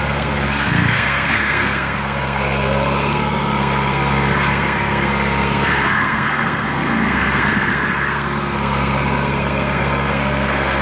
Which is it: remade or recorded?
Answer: remade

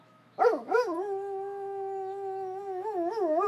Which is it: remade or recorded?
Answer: remade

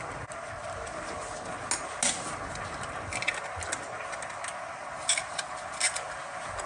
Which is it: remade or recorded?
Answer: recorded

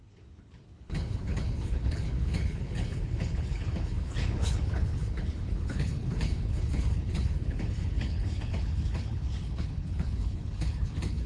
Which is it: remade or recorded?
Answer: remade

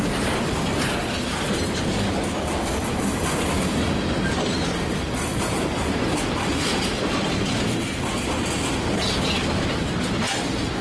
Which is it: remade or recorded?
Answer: recorded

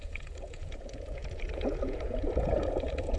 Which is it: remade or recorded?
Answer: remade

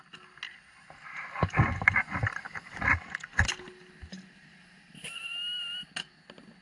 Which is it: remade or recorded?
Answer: recorded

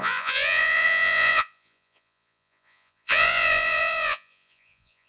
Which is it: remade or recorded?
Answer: remade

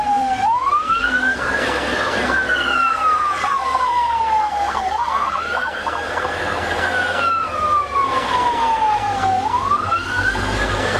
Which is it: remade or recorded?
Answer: remade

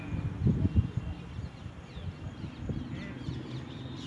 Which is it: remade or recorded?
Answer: recorded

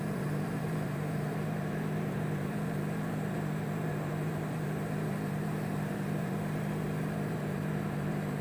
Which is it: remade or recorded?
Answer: remade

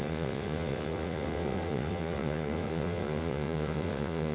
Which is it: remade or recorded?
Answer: remade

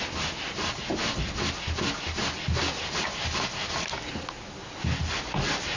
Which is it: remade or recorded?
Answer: recorded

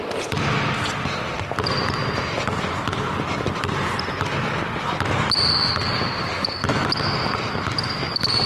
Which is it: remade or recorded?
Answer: recorded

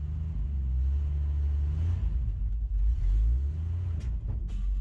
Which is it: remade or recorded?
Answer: recorded